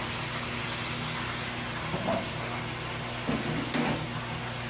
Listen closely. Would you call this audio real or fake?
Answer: real